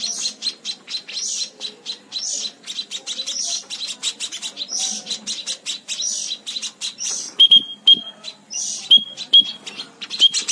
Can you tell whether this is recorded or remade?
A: recorded